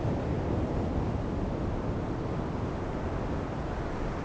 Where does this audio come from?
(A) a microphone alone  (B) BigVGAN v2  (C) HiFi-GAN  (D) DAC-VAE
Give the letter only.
A